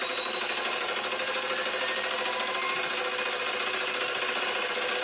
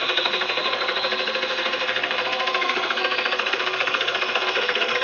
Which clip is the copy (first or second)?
second